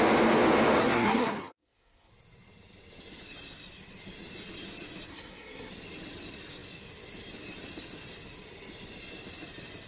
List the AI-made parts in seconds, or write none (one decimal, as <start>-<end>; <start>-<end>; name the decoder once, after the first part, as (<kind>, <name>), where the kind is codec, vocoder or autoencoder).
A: 0.8-2.1 (codec, SNAC); 5.1-5.7